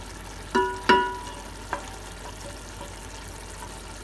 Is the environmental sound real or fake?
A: real